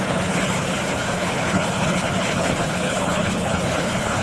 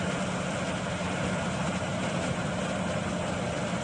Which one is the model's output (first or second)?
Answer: first